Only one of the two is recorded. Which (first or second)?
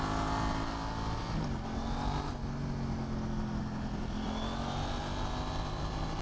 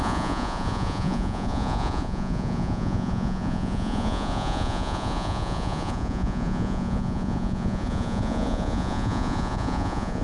first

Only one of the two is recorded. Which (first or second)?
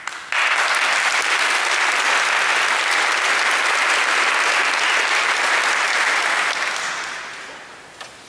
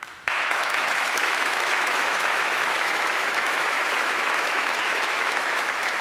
first